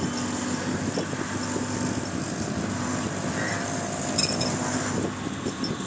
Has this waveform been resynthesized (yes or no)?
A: no